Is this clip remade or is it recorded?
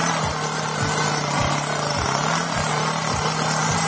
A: recorded